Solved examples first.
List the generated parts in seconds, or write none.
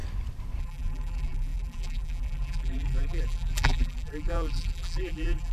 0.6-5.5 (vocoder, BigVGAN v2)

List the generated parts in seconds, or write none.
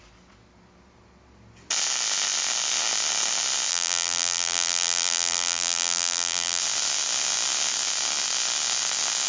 3.7-6.6 (vocoder, BigVGAN v2)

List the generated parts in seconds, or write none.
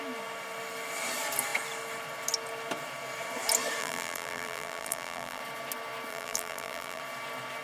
3.8-5.4 (vocoder, BigVGAN v2); 6.1-7.0